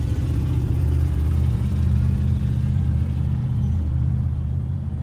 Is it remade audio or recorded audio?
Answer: remade